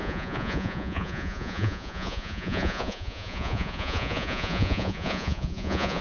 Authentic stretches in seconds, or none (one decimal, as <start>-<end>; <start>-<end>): none